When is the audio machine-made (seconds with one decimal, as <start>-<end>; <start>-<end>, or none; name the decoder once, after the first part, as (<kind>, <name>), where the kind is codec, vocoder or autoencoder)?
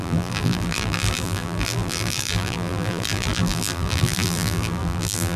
0.0-5.4 (vocoder, BigVGAN v2)